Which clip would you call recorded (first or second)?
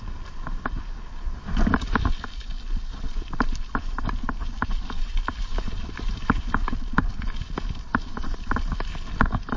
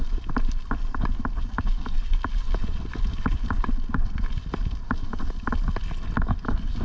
second